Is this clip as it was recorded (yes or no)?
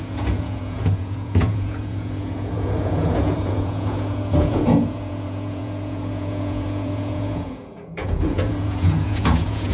no